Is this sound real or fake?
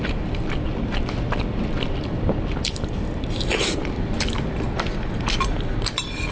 fake